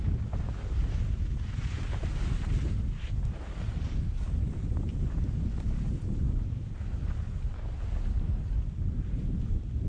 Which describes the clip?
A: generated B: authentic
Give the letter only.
B